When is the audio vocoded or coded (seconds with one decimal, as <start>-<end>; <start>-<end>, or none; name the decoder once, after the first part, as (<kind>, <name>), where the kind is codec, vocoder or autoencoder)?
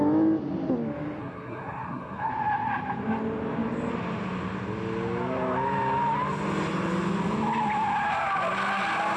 1.2-2.3 (codec, SNAC)